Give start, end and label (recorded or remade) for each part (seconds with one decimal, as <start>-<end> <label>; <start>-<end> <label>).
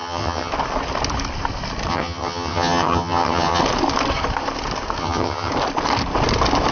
0.0-0.5 remade; 0.5-1.9 recorded; 1.9-3.6 remade; 3.6-5.0 recorded; 5.0-5.5 remade; 5.5-6.7 recorded